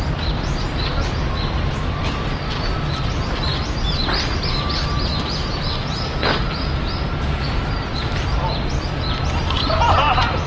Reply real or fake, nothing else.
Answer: real